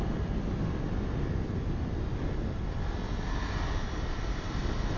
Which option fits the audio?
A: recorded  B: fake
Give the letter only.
A